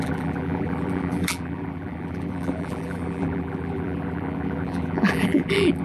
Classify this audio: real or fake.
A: fake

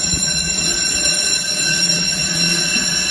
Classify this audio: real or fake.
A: fake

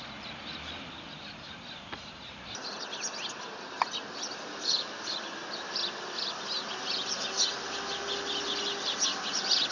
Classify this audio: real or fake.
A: real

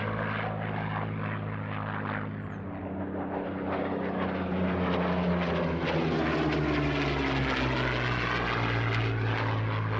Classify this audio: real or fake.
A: real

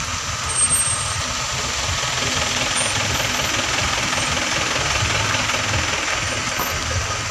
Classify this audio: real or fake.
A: real